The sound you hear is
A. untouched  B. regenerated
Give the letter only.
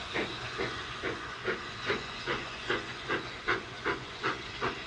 B